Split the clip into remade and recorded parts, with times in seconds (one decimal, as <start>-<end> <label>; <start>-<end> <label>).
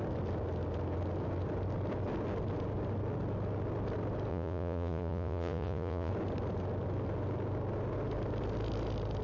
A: 0.0-4.3 recorded; 4.3-6.1 remade; 6.1-9.2 recorded